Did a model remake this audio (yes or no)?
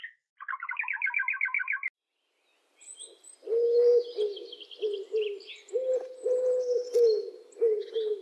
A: no